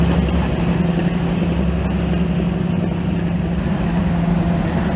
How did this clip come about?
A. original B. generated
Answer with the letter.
A